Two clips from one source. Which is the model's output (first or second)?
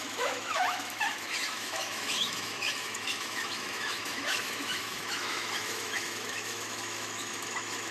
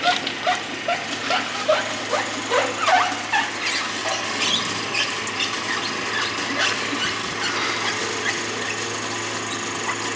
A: first